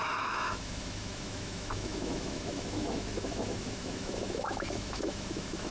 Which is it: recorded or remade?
remade